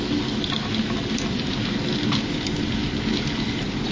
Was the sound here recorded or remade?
recorded